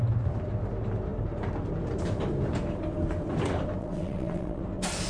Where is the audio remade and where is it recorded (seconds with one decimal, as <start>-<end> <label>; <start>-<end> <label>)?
0.0-3.8 recorded; 3.8-4.6 remade; 4.6-5.1 recorded